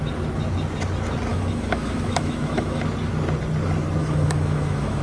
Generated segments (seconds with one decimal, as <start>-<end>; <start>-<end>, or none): 1.3-2.8; 4.0-5.0

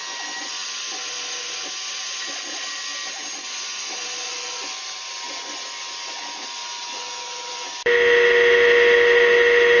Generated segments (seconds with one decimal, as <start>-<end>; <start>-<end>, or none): none

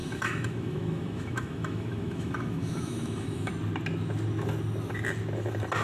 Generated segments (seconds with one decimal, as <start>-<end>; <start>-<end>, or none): 0.0-3.5

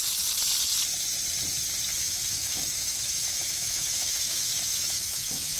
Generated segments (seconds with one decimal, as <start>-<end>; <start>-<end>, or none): 1.9-5.6

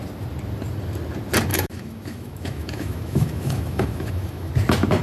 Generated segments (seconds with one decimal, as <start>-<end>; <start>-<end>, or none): 1.5-4.5

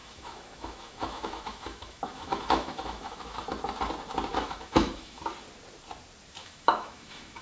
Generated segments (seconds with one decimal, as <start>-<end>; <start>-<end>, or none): 0.0-3.4; 4.3-5.2; 6.4-7.4

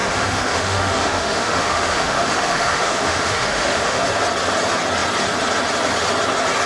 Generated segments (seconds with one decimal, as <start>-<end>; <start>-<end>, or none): 0.0-4.0

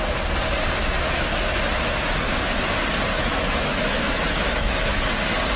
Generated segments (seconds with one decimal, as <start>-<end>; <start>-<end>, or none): 0.8-1.4; 3.1-5.1